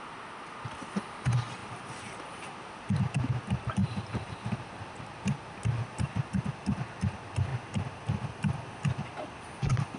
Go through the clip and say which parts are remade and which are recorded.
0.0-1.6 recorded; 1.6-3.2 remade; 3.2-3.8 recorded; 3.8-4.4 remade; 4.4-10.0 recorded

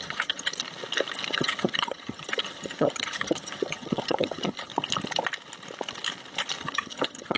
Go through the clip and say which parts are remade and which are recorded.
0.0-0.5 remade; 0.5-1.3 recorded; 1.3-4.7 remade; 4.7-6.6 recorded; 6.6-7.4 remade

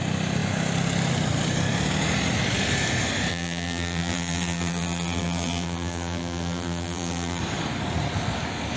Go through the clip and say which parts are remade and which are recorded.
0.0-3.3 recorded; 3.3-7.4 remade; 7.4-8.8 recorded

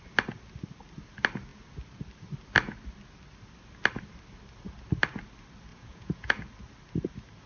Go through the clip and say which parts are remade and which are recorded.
0.0-5.7 recorded; 5.7-6.4 remade; 6.4-7.5 recorded

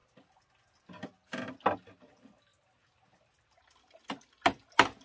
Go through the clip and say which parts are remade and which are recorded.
0.0-5.0 recorded

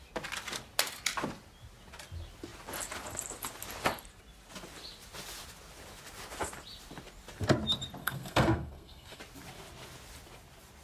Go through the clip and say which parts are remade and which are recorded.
0.0-8.0 recorded; 8.0-9.2 remade; 9.2-10.8 recorded